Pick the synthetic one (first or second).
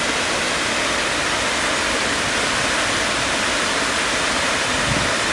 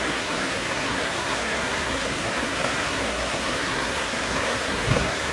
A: second